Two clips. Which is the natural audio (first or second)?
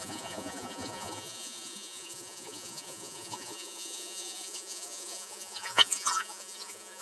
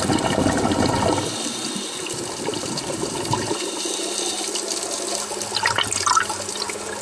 second